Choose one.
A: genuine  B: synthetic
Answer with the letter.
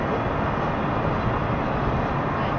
A